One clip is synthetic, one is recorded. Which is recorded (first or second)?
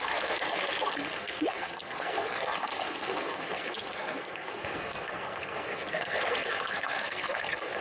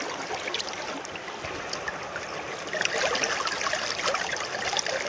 second